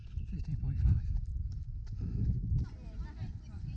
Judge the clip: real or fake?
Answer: fake